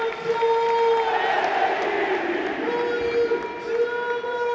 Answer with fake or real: real